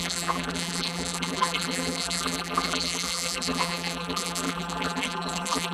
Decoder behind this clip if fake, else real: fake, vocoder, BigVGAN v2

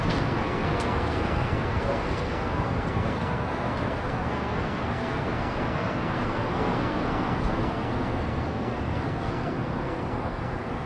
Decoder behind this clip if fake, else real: fake, codec, SNAC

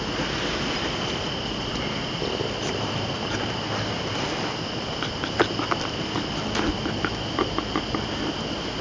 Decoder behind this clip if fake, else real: real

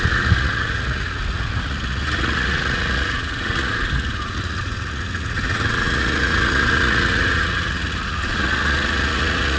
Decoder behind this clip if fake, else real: fake, vocoder, Vocos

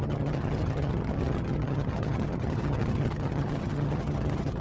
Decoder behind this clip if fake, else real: fake, vocoder, HiFi-GAN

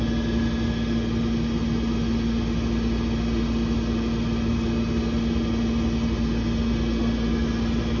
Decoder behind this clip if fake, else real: real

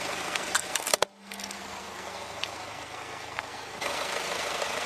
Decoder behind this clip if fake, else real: fake, codec, SNAC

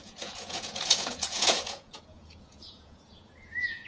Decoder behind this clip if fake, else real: fake, vocoder, Vocos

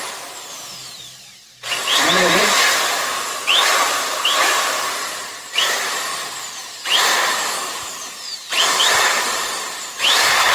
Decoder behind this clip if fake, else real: fake, vocoder, BigVGAN v2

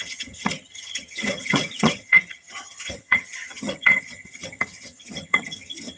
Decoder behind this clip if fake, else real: fake, vocoder, HiFi-GAN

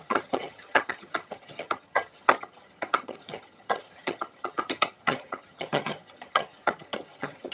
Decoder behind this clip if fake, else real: fake, vocoder, HiFi-GAN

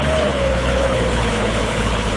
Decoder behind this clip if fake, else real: fake, codec, HILCodec